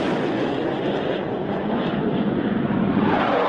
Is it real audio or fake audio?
fake